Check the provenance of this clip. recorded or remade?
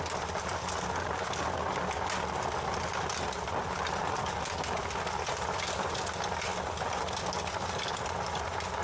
recorded